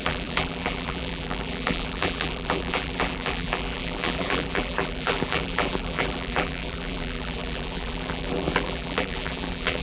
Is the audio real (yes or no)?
no